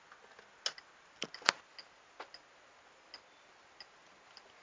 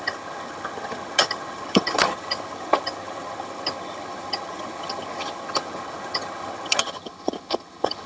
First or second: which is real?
first